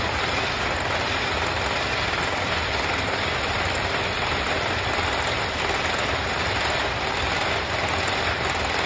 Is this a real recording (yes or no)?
yes